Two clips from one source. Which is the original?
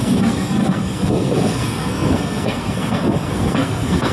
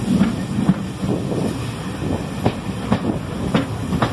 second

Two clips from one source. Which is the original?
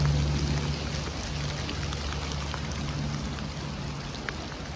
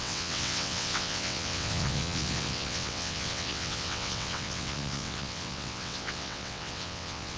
first